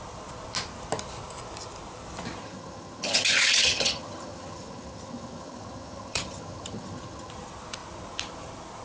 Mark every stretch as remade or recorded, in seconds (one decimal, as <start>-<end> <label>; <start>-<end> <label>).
0.0-2.4 recorded; 2.4-7.3 remade; 7.3-8.8 recorded